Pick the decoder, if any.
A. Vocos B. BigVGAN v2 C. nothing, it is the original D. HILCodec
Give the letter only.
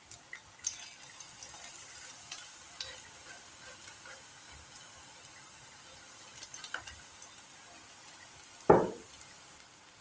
C